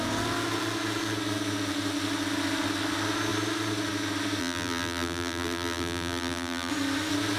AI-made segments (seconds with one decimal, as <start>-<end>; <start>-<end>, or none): 4.4-6.7